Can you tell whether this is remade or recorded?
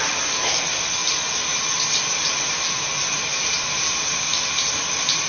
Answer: recorded